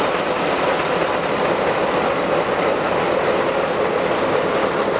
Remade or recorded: recorded